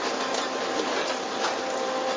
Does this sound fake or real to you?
real